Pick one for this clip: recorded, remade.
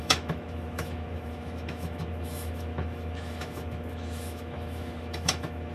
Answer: remade